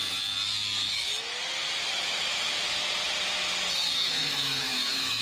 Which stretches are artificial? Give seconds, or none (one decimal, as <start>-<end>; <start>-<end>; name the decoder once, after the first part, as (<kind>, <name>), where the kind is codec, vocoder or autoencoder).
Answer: 1.9-2.6 (autoencoder, DAC-VAE); 4.0-5.2